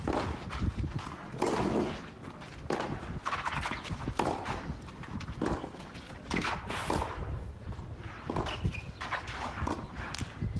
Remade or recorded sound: recorded